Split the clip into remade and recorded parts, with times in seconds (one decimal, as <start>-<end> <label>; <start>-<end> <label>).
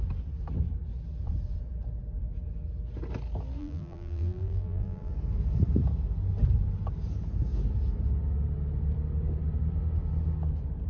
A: 0.0-3.6 recorded; 3.6-5.1 remade; 5.1-10.9 recorded